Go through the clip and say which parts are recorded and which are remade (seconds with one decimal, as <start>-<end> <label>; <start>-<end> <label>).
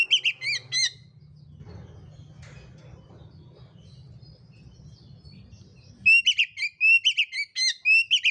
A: 0.0-8.3 recorded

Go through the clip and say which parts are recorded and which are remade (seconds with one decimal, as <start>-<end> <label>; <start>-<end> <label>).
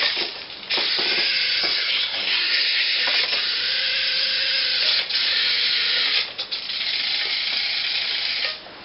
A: 0.0-1.6 recorded; 1.6-3.0 remade; 3.0-8.8 recorded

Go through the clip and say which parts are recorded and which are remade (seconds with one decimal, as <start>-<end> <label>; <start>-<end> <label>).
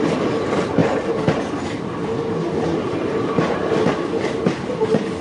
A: 0.0-5.2 recorded